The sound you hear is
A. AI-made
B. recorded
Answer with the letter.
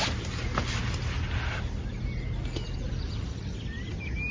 B